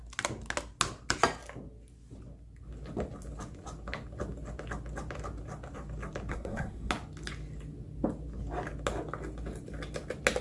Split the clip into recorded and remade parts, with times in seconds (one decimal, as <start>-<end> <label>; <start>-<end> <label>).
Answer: 0.0-6.3 recorded; 6.3-6.9 remade; 6.9-10.4 recorded